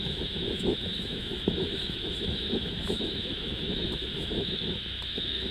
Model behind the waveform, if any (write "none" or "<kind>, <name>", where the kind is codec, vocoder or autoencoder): autoencoder, DAC-VAE